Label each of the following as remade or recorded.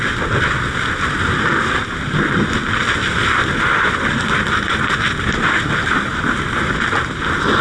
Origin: recorded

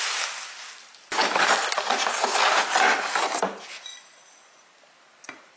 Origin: recorded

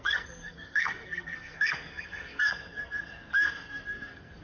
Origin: remade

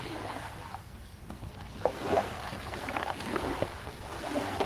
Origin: remade